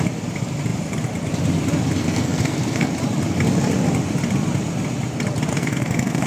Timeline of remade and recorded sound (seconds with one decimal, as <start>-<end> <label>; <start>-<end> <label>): 0.0-2.0 recorded; 2.0-2.9 remade; 2.9-5.5 recorded; 5.5-6.3 remade